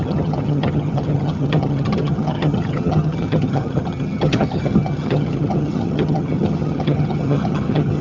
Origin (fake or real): fake